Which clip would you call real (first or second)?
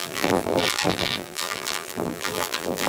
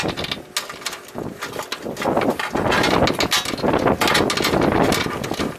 second